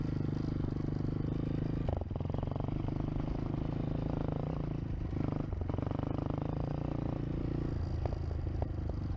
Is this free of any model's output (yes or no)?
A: yes